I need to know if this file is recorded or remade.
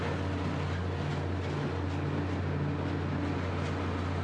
recorded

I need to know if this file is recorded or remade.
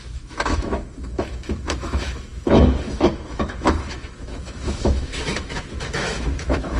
remade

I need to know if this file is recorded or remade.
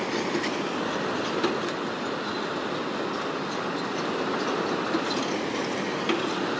recorded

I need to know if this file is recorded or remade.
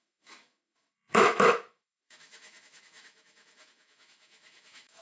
remade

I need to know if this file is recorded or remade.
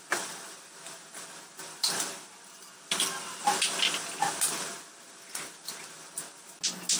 recorded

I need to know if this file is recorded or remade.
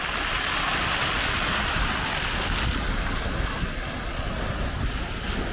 recorded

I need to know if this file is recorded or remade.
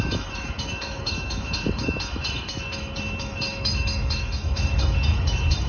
remade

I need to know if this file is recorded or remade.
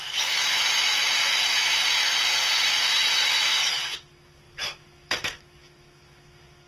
remade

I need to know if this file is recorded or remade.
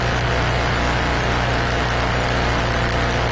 recorded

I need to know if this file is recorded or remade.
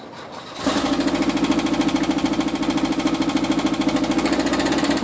recorded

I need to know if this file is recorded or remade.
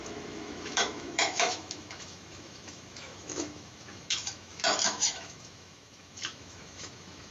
remade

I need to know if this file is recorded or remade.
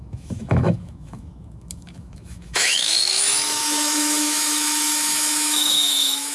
remade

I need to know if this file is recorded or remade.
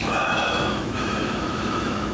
remade